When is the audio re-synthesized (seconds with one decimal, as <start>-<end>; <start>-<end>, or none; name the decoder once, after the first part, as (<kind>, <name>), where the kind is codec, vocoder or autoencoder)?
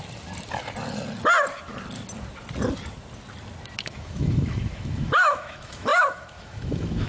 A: 3.8-7.1 (autoencoder, DAC-VAE)